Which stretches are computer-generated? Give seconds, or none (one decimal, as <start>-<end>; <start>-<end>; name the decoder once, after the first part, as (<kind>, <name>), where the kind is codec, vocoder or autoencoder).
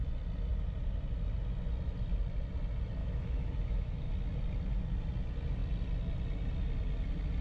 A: 3.0-4.1 (autoencoder, DAC-VAE)